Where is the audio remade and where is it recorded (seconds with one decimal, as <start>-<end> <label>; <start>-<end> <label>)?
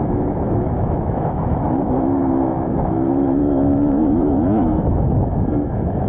0.0-6.1 remade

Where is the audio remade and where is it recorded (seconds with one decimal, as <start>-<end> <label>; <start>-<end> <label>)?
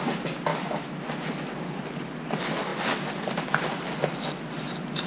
0.0-0.5 recorded; 0.5-1.0 remade; 1.0-5.1 recorded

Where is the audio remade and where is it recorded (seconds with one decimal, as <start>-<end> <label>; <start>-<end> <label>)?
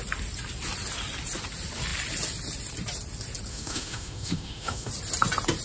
0.0-3.5 recorded; 3.5-4.9 remade; 4.9-5.6 recorded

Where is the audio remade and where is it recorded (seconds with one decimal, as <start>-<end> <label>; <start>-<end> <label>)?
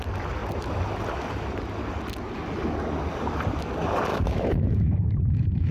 0.0-4.1 recorded; 4.1-5.7 remade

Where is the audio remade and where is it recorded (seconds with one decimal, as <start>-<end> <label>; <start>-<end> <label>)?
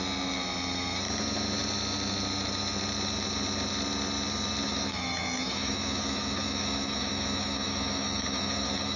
0.0-4.7 recorded; 4.7-9.0 remade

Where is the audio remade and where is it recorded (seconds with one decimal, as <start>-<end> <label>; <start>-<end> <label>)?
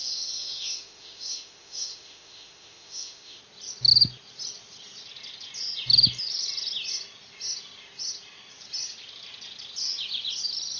0.0-3.4 remade; 3.4-10.8 recorded